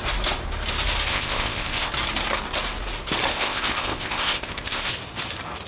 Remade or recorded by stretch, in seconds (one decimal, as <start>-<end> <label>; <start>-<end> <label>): 0.0-1.1 recorded; 1.1-1.9 remade; 1.9-3.3 recorded; 3.3-4.9 remade; 4.9-5.7 recorded